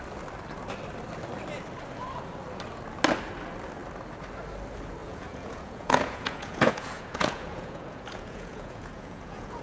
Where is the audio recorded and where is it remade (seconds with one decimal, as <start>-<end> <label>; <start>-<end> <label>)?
0.0-5.0 recorded; 5.0-9.6 remade